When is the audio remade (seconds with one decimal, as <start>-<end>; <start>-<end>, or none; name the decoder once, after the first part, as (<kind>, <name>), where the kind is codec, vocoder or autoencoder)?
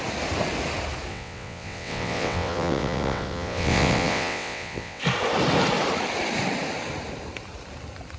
1.1-5.0 (vocoder, WaveNeXt)